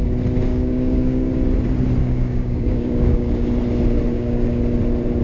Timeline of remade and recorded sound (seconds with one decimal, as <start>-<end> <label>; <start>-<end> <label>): 0.0-0.5 recorded; 0.5-1.3 remade; 1.3-2.0 recorded; 2.0-3.5 remade; 3.5-4.1 recorded; 4.1-4.6 remade; 4.6-5.2 recorded